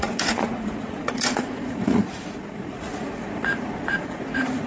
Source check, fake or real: fake